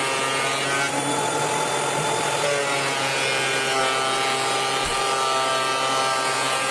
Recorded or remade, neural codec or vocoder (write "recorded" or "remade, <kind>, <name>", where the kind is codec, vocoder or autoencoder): recorded